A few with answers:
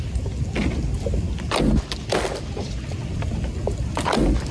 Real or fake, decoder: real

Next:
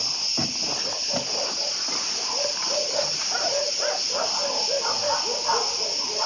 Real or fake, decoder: real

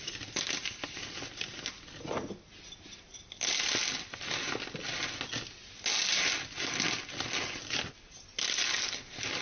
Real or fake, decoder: real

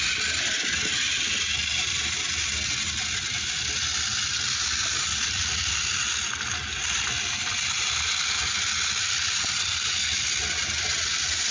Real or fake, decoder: real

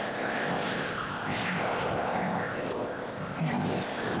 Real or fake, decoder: fake, codec, ZipCodec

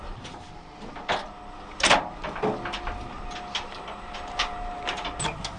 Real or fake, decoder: real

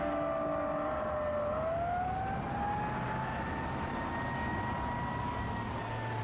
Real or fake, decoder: real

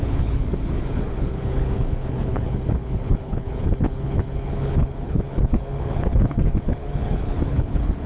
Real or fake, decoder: fake, codec, HILCodec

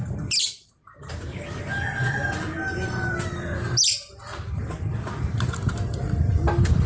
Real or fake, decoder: real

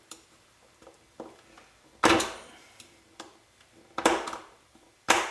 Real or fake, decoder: fake, vocoder, BigVGAN v2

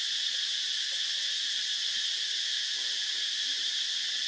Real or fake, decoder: real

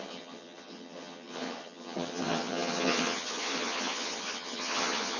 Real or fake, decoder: fake, vocoder, HiFi-GAN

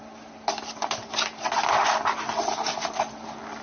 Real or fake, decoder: real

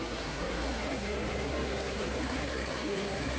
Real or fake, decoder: fake, codec, SNAC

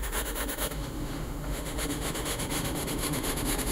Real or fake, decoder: fake, autoencoder, DAC-VAE